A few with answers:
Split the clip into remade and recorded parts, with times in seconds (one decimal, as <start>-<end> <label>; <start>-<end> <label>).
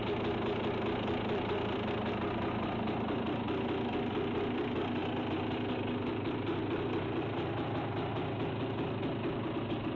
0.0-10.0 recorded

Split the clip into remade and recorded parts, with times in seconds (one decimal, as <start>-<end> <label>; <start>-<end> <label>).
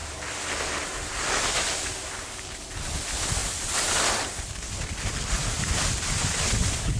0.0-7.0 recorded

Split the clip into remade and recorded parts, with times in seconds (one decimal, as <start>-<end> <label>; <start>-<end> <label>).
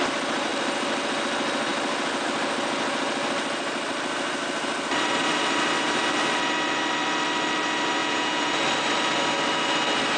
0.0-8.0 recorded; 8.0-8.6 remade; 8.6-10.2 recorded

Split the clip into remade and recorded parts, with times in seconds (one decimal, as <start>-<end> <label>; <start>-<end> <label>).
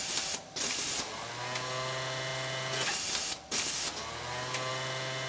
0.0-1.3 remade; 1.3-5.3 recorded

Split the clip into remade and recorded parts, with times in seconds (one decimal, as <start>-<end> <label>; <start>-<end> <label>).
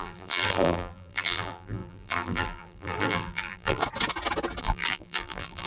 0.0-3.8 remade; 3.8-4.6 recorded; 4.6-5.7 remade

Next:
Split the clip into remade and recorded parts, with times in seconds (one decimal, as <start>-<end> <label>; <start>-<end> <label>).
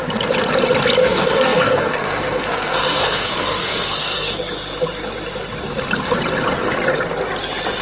0.0-1.0 recorded; 1.0-4.3 remade; 4.3-7.8 recorded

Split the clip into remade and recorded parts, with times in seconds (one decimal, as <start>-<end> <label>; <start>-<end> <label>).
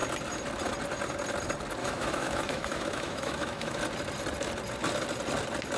0.0-1.8 recorded; 1.8-3.8 remade; 3.8-5.8 recorded